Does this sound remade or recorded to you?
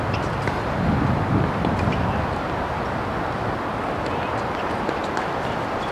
recorded